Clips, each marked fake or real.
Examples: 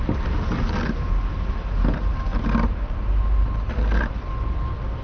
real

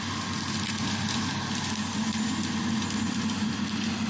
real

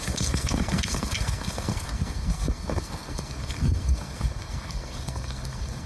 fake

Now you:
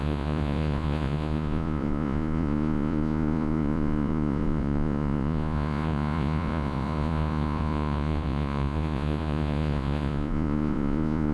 fake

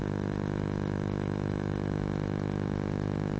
fake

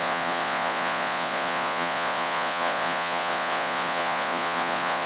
fake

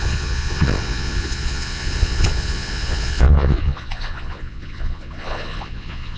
fake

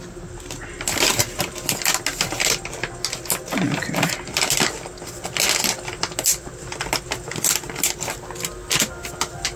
real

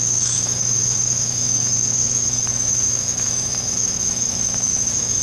fake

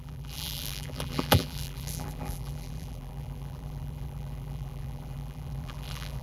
fake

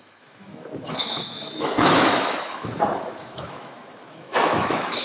fake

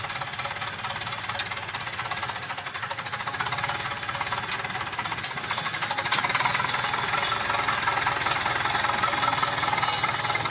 real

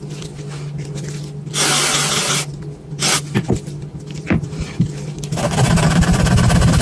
real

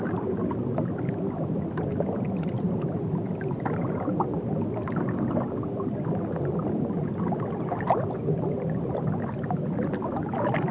real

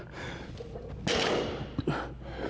real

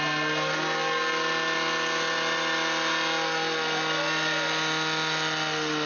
real